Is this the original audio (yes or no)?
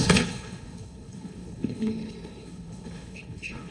no